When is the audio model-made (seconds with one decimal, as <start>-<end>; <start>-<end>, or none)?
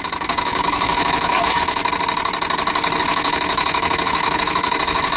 0.0-1.8; 3.0-5.2